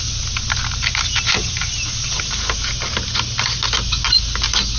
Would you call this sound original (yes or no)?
yes